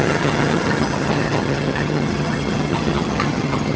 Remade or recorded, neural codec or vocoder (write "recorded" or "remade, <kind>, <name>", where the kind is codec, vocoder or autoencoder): remade, vocoder, HiFi-GAN